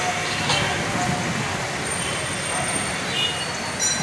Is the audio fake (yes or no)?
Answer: no